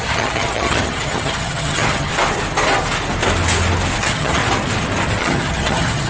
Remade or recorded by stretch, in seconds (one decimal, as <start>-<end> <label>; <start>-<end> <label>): 0.0-2.1 remade; 2.1-4.0 recorded; 4.0-4.4 remade; 4.4-5.2 recorded; 5.2-6.1 remade

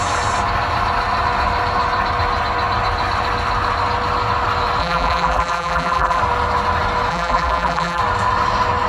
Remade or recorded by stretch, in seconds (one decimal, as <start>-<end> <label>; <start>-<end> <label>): 0.0-4.8 recorded; 4.8-6.2 remade; 6.2-7.1 recorded; 7.1-8.0 remade; 8.0-8.9 recorded

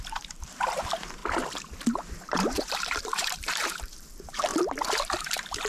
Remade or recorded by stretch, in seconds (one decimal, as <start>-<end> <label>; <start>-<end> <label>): 0.0-1.2 remade; 1.2-2.1 recorded; 2.1-4.5 remade; 4.5-5.2 recorded; 5.2-5.7 remade